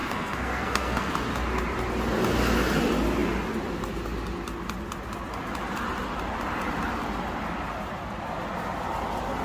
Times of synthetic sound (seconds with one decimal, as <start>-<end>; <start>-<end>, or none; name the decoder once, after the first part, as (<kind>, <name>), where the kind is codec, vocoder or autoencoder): 0.0-1.1 (codec, SNAC)